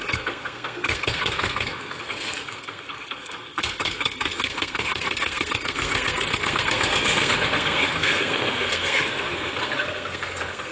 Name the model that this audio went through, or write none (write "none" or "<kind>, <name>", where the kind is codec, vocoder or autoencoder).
codec, SNAC